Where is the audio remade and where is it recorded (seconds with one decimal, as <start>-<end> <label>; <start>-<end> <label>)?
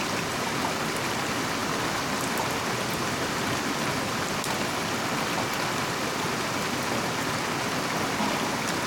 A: 0.0-8.9 recorded